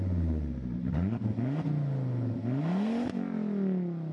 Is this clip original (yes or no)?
yes